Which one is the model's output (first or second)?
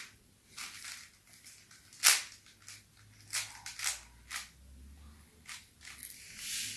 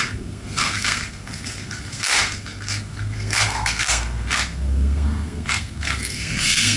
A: second